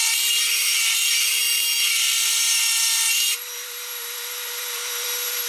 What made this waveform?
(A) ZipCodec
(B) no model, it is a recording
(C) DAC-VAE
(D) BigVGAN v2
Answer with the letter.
D